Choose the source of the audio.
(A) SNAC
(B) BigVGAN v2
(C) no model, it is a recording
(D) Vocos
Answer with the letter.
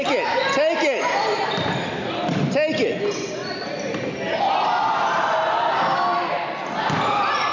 C